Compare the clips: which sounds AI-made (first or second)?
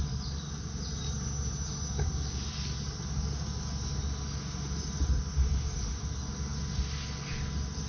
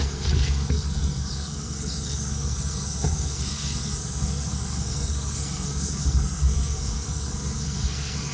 second